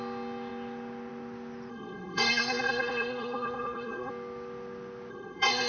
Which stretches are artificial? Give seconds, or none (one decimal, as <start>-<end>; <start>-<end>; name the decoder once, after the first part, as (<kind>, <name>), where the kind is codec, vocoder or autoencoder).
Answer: 1.7-4.1 (codec, SNAC); 5.1-5.7